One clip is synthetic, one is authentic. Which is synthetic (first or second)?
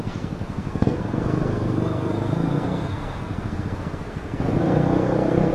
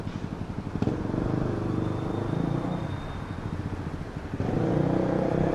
first